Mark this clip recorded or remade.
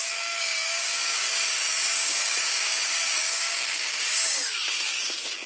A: remade